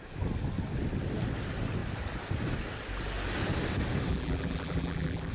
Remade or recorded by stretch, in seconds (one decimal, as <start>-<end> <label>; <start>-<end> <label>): 0.0-4.1 recorded; 4.1-5.3 remade